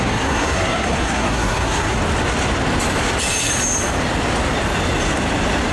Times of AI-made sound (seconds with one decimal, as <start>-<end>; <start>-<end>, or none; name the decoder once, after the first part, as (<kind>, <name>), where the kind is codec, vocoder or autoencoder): 0.0-2.0 (codec, SNAC)